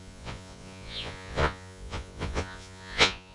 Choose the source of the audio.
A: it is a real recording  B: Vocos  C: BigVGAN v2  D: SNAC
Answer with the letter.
B